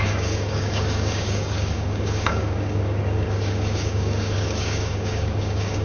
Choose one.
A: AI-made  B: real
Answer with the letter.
A